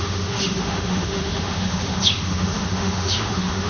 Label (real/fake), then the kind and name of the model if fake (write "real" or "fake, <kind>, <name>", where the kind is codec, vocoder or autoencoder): fake, autoencoder, DAC-VAE